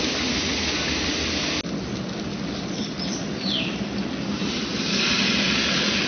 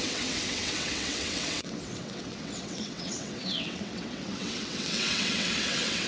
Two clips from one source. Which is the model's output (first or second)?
second